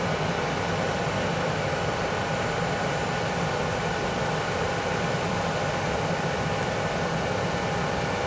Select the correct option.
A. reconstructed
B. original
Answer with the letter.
B